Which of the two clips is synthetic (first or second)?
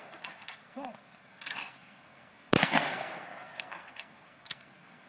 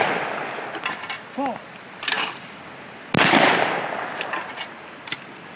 first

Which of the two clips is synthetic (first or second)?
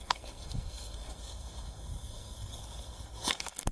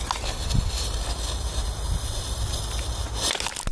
first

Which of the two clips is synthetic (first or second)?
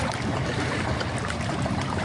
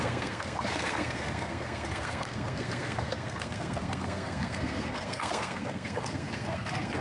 second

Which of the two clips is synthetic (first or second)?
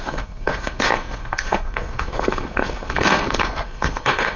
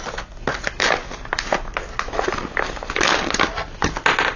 first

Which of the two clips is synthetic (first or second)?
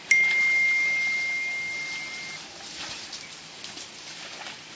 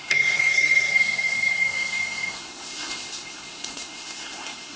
second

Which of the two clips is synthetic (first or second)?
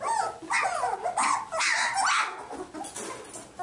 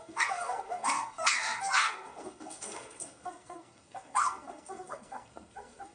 second